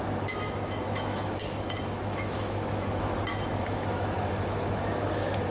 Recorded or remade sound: remade